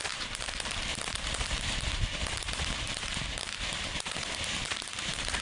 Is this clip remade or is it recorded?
remade